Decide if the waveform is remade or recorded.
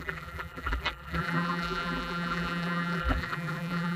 remade